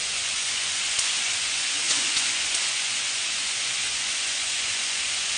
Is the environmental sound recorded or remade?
remade